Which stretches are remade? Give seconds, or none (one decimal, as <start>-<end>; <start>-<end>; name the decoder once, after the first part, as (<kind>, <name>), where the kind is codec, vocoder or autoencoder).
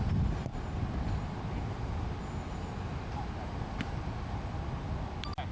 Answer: none